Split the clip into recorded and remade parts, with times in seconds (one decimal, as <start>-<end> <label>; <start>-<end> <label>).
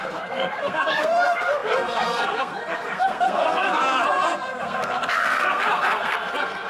0.0-6.7 remade